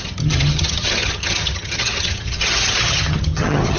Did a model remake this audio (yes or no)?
yes